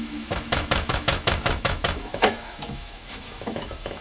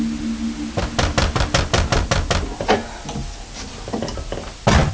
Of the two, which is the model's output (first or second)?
first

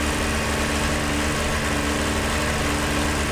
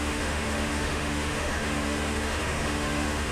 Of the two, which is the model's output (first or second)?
second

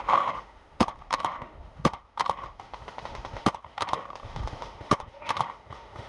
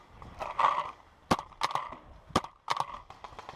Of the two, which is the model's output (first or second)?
first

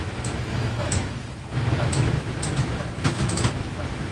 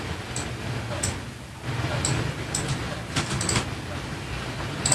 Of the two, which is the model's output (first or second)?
first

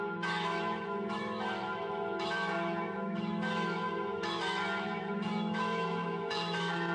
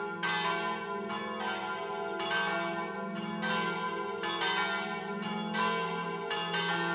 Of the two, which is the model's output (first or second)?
first